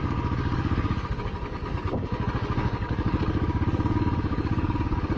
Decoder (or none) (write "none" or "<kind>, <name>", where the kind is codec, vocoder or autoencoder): codec, DAC